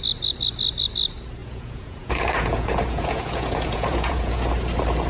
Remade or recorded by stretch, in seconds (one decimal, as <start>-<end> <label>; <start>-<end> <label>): 0.0-1.4 recorded; 1.4-4.5 remade; 4.5-5.1 recorded